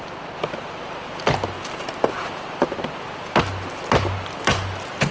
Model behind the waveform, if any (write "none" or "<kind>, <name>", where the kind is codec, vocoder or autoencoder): none